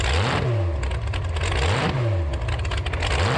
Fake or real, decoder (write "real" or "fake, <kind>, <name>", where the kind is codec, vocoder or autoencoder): real